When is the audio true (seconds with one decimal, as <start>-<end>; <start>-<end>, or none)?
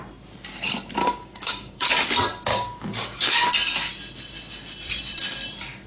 0.0-1.0; 1.9-2.5; 3.5-5.9